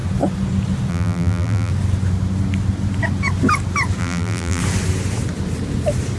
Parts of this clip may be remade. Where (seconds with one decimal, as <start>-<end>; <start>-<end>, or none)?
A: 0.9-1.7; 4.0-4.6

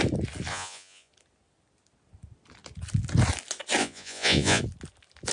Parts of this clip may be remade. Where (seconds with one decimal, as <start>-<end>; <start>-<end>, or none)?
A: 0.5-1.1; 3.8-4.6